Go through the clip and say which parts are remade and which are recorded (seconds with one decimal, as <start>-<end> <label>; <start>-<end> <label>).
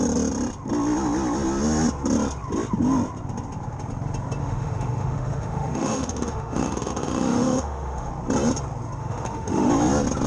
0.0-4.4 recorded; 4.4-8.1 remade; 8.1-9.0 recorded; 9.0-9.7 remade; 9.7-10.3 recorded